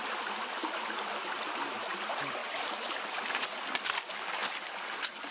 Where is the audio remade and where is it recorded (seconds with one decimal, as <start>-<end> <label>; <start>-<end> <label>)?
0.0-2.4 recorded; 2.4-3.2 remade; 3.2-5.3 recorded